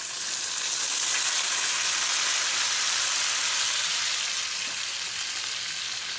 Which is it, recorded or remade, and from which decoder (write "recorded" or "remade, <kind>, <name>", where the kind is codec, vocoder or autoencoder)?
recorded